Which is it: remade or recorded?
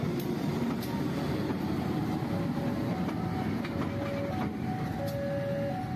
recorded